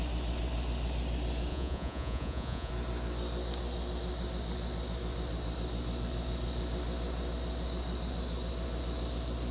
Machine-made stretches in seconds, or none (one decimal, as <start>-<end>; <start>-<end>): 1.5-2.7